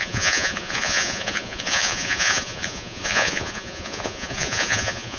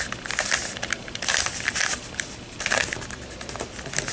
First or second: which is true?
second